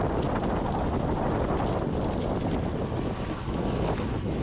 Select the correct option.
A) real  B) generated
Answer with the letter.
A